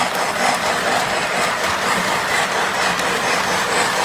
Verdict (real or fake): real